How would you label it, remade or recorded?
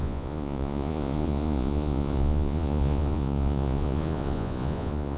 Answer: remade